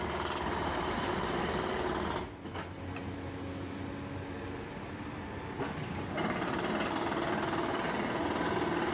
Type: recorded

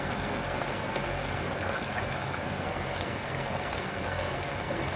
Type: remade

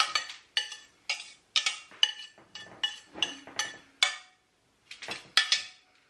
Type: recorded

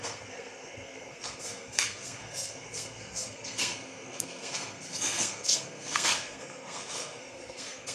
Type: remade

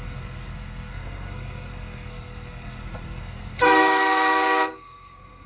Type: remade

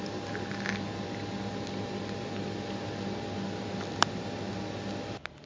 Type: recorded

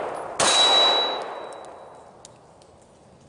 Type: recorded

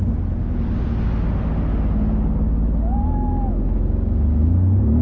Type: recorded